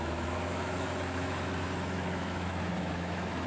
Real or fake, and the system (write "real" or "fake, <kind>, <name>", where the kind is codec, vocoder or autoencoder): fake, autoencoder, DAC-VAE